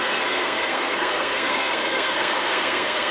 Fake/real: fake